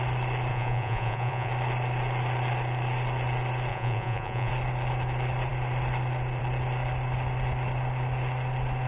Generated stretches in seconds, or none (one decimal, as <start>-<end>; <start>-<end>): 0.5-1.5; 3.7-4.5